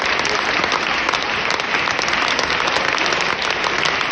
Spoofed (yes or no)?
no